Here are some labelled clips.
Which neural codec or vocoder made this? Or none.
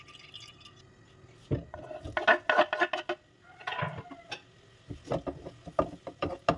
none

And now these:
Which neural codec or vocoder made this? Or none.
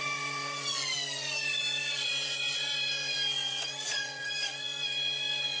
vocoder, Vocos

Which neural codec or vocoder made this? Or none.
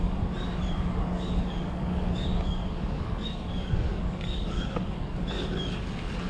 codec, DAC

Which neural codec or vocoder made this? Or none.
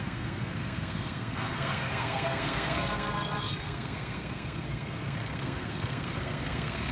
codec, SNAC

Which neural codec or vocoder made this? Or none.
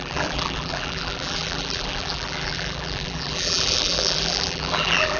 vocoder, BigVGAN v2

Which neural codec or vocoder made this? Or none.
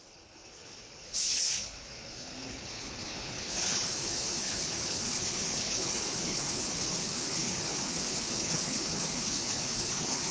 codec, HILCodec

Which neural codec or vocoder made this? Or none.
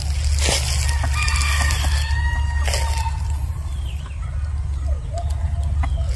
none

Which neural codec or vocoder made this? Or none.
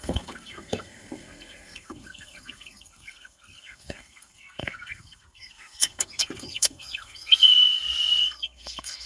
codec, SNAC